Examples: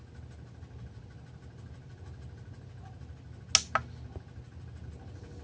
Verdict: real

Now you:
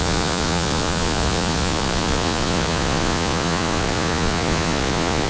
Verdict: fake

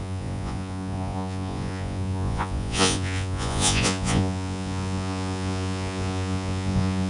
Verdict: fake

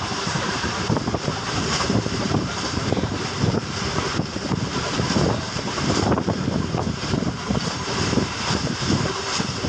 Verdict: fake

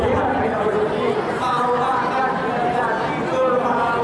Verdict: real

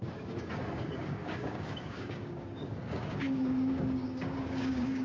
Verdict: fake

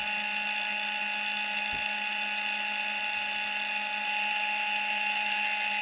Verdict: real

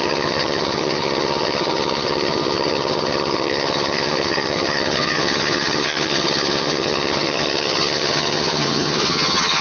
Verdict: fake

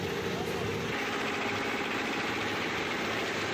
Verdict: real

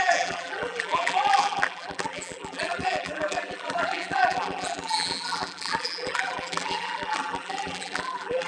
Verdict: fake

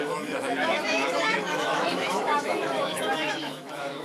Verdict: fake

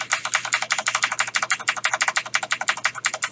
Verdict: real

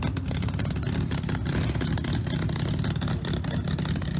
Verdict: real